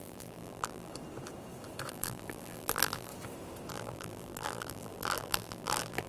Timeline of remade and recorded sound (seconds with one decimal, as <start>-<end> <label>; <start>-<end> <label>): 0.0-0.9 remade; 0.9-1.9 recorded; 1.9-3.1 remade; 3.1-3.7 recorded; 3.7-6.1 remade